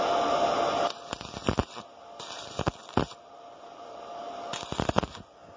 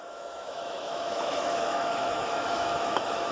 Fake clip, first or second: second